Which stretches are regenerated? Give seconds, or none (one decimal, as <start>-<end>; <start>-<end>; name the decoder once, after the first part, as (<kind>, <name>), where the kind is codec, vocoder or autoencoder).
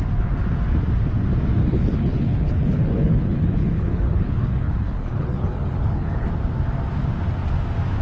1.6-6.3 (codec, HILCodec)